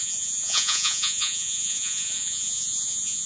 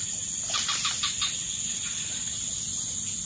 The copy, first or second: first